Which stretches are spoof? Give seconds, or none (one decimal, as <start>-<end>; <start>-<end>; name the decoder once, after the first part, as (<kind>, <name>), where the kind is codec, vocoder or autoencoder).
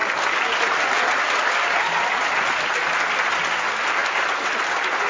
none